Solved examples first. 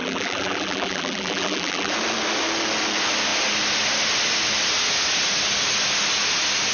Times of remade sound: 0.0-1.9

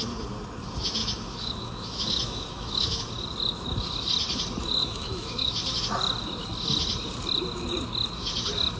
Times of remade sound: 1.0-3.0; 4.8-5.8